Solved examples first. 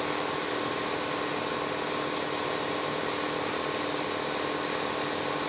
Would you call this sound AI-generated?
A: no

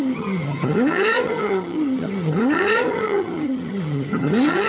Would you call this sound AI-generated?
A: yes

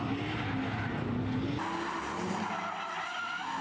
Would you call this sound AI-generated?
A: no